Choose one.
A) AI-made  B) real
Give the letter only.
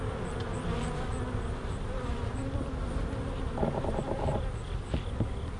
B